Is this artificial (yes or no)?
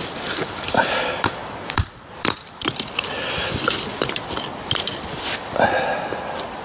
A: yes